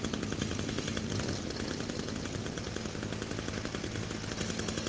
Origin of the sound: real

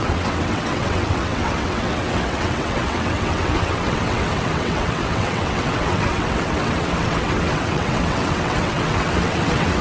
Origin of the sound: fake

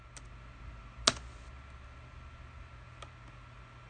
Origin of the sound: real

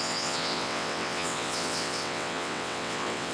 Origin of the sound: fake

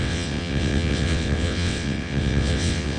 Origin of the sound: fake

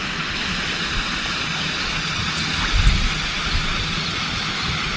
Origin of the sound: real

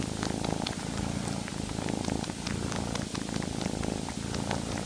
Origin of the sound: real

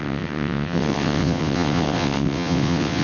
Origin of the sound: fake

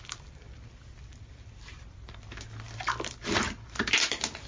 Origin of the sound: real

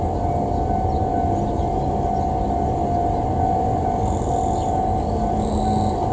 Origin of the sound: real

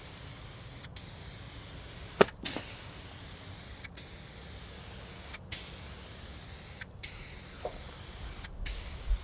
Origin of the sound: real